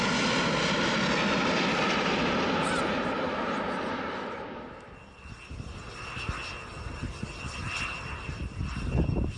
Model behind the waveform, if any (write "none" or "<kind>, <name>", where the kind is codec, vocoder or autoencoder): none